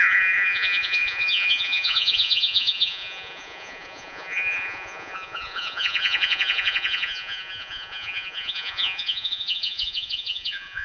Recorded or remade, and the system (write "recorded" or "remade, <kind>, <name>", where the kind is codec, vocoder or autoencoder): remade, vocoder, Vocos